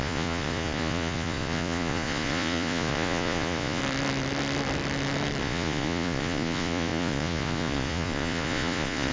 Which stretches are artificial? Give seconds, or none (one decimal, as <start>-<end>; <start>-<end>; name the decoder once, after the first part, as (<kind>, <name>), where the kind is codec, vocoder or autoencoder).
0.0-3.8 (vocoder, Vocos); 5.4-9.1